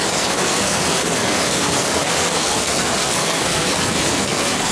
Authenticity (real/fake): fake